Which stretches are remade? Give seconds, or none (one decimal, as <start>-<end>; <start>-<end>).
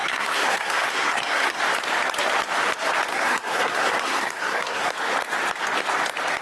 0.0-1.6; 3.1-4.9